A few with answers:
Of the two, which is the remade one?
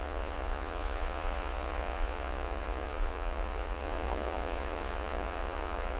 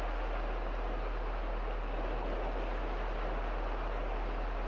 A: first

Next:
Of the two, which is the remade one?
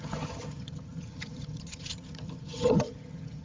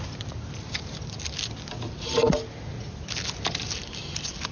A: first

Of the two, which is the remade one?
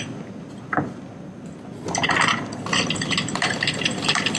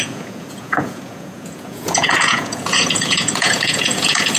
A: second